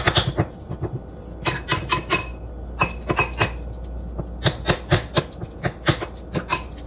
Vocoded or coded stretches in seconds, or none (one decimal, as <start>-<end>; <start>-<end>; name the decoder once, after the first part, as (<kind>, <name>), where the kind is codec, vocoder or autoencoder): none